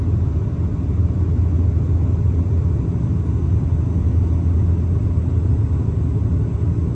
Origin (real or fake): real